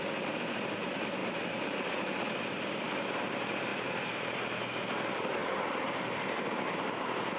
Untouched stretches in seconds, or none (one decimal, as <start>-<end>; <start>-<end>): 0.0-1.2; 2.3-3.7; 4.6-5.4; 6.0-7.4